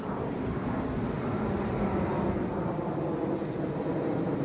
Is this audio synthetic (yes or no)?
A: no